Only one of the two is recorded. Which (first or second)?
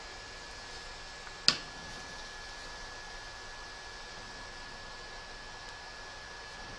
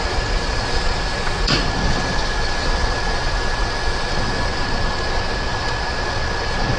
first